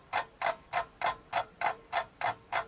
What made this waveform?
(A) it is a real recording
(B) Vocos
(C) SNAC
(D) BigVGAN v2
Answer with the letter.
D